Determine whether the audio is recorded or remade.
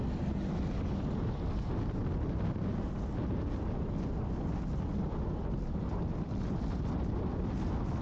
recorded